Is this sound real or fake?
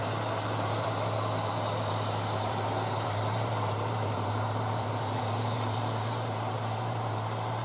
fake